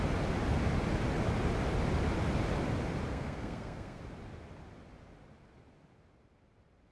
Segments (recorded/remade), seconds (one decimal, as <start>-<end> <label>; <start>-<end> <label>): 0.0-3.1 recorded; 3.1-4.0 remade; 4.0-6.9 recorded